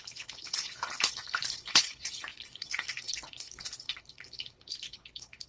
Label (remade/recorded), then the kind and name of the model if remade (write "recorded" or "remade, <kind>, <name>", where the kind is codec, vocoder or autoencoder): remade, codec, HILCodec